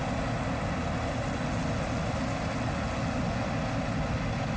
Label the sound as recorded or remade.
recorded